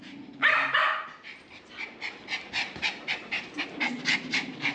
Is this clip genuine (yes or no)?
yes